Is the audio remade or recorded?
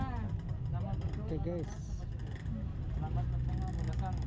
recorded